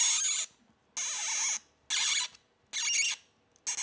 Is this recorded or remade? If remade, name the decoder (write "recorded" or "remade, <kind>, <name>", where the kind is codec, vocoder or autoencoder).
recorded